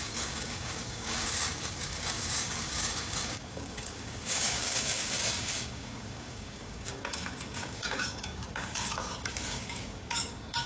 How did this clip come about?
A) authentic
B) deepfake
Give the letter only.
B